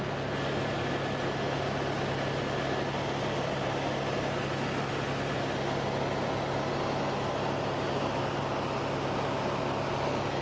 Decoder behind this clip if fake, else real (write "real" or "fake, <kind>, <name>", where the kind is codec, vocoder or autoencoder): real